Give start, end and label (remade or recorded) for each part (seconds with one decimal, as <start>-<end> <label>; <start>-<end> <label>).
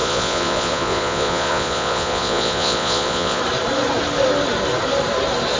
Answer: 0.0-3.4 remade; 3.4-5.6 recorded